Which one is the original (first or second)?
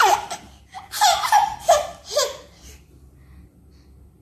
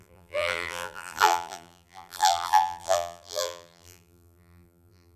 first